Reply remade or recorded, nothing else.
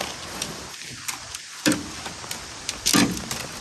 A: recorded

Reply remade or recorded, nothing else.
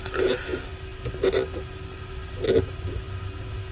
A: recorded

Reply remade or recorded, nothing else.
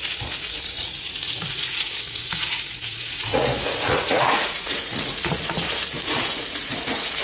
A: remade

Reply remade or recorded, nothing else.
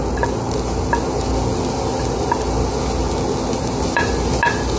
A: recorded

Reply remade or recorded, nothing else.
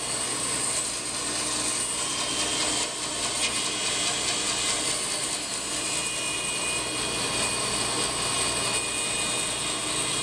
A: recorded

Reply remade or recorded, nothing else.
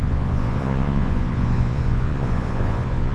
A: remade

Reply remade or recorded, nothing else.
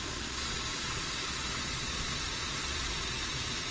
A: remade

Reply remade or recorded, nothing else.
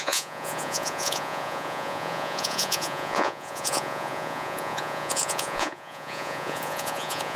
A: remade